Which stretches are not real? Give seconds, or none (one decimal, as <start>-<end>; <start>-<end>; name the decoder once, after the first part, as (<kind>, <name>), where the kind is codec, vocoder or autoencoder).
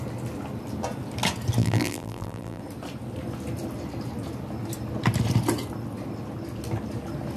1.6-2.6 (vocoder, BigVGAN v2)